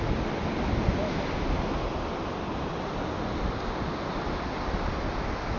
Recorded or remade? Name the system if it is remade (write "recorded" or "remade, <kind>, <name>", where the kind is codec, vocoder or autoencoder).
recorded